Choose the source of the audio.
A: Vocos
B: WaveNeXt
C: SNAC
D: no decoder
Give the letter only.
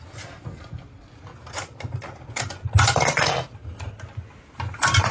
D